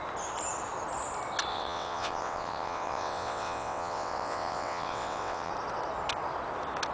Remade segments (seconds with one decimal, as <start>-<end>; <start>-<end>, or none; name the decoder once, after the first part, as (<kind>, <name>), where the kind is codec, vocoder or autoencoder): 1.5-5.5 (vocoder, WaveNeXt)